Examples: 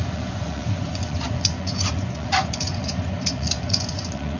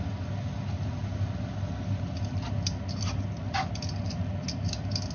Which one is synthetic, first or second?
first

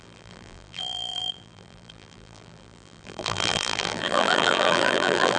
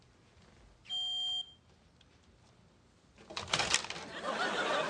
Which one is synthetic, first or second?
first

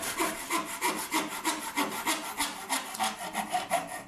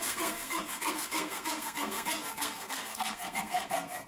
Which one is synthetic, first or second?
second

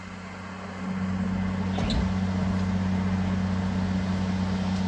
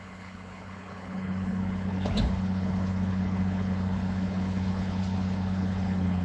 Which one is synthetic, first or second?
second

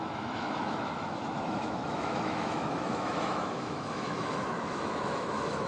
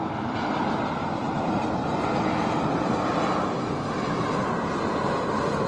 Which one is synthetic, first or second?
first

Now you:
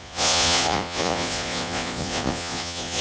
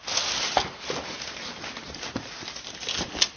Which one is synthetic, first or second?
first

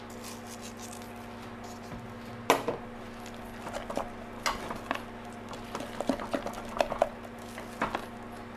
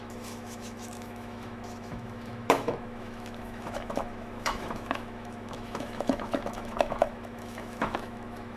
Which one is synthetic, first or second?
second